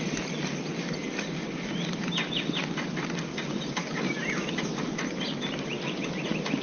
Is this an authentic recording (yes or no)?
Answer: yes